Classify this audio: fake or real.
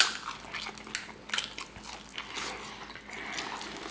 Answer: real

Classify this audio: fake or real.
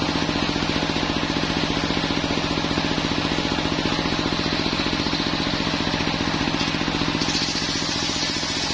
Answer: real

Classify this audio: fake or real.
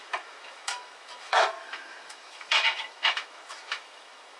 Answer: fake